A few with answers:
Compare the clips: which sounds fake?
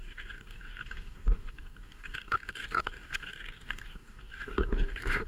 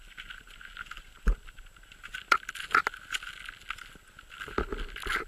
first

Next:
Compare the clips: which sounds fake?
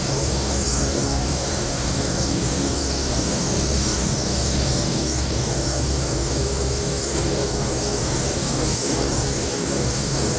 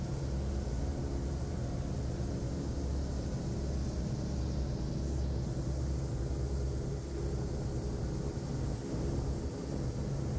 first